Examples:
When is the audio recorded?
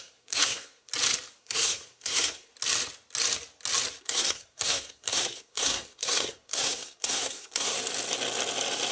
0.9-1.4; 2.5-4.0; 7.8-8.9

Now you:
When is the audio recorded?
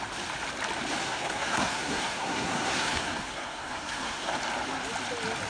0.0-1.0; 4.3-5.5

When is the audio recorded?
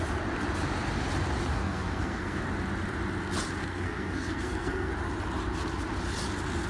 0.0-1.5; 2.4-3.6; 4.9-6.7